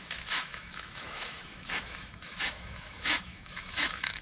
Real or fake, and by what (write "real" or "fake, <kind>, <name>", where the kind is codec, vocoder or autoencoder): fake, autoencoder, DAC-VAE